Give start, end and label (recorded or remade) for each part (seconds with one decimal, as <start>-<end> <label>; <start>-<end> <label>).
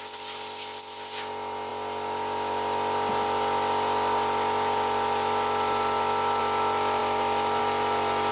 0.0-8.3 recorded